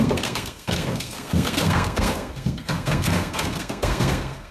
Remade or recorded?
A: remade